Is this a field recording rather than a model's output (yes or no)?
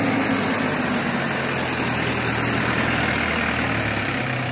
yes